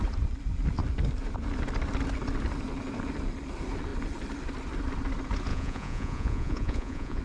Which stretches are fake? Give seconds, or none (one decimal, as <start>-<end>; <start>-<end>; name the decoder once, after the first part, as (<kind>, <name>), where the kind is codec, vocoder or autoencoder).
5.5-7.2 (vocoder, Vocos)